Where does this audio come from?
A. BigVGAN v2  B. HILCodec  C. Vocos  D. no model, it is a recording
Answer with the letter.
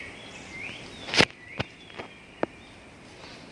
D